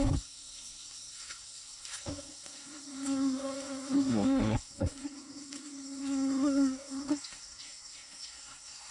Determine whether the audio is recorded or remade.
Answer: remade